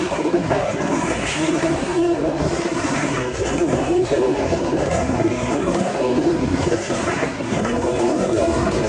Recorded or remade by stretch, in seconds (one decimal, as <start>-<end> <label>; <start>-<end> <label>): 0.0-8.9 remade

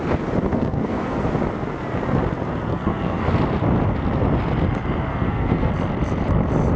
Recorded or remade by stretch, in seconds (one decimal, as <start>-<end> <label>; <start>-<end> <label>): 0.0-0.5 recorded; 0.5-1.3 remade; 1.3-2.7 recorded; 2.7-3.2 remade; 3.2-5.1 recorded; 5.1-5.7 remade; 5.7-6.8 recorded

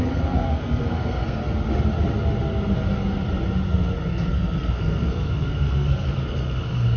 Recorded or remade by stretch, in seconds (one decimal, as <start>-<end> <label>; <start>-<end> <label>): 0.0-1.4 remade; 1.4-3.7 recorded; 3.7-7.0 remade

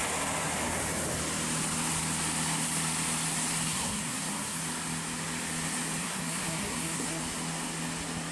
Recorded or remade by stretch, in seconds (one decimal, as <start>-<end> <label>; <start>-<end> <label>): 0.0-3.7 recorded; 3.7-4.6 remade; 4.6-6.0 recorded; 6.0-7.2 remade; 7.2-8.3 recorded

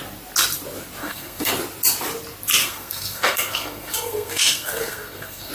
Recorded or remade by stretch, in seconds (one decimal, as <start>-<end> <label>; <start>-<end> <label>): 0.0-1.0 recorded; 1.0-1.5 remade; 1.5-2.6 recorded; 2.6-5.5 remade

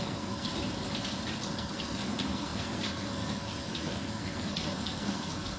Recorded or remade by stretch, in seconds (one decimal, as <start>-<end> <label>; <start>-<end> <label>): 0.0-0.5 remade; 0.5-1.5 recorded; 1.5-5.6 remade

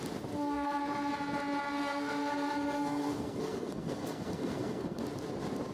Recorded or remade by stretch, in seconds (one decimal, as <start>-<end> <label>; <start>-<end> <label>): 0.0-0.4 recorded; 0.4-1.1 remade; 1.1-1.6 recorded; 1.6-5.0 remade; 5.0-5.7 recorded

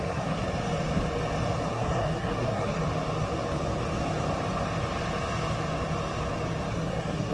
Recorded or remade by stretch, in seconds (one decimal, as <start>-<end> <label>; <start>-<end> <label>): 0.0-0.4 remade; 0.4-1.7 recorded; 1.7-2.8 remade; 2.8-6.7 recorded; 6.7-7.3 remade